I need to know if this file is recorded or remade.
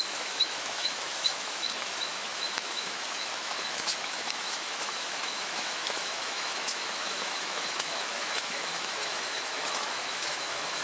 remade